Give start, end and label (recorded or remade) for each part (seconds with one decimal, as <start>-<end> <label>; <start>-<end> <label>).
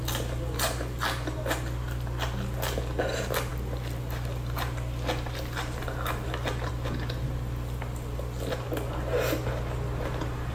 0.0-10.5 recorded